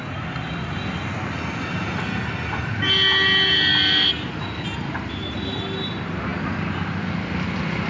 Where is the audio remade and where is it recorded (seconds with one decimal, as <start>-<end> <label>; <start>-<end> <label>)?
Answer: 0.0-7.9 recorded